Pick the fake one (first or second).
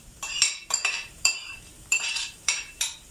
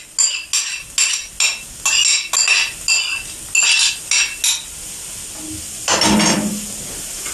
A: first